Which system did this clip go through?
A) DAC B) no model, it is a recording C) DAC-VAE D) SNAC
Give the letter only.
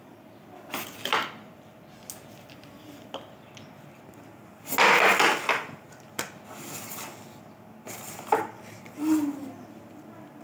B